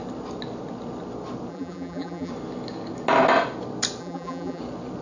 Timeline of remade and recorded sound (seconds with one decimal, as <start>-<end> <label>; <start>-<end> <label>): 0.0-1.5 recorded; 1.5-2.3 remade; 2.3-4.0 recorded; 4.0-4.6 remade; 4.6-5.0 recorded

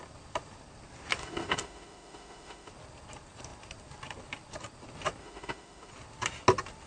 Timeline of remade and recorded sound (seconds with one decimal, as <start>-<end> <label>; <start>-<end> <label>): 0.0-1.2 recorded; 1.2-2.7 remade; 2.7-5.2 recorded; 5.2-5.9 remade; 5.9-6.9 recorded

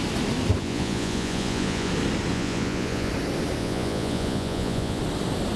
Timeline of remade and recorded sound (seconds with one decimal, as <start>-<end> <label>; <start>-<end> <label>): 0.0-0.6 recorded; 0.6-1.9 remade; 1.9-2.3 recorded; 2.3-3.1 remade; 3.1-3.6 recorded; 3.6-5.0 remade; 5.0-5.6 recorded

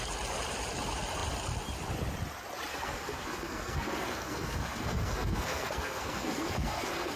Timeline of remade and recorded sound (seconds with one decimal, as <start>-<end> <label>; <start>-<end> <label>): 0.0-2.7 recorded; 2.7-7.2 remade